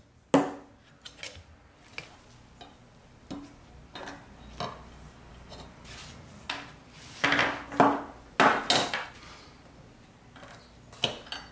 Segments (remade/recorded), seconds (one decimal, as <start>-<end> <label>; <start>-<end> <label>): 0.0-11.5 recorded